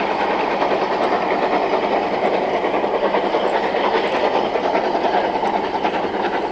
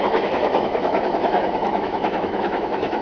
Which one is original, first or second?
first